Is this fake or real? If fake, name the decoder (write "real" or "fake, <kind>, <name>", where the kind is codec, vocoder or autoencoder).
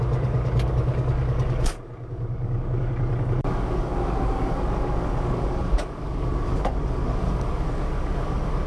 fake, codec, DAC